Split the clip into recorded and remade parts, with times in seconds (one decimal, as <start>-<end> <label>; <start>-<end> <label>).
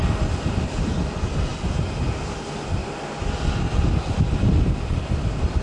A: 0.0-5.6 recorded